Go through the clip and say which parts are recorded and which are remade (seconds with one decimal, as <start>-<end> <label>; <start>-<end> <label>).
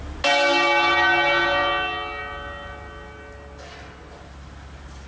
0.0-5.1 recorded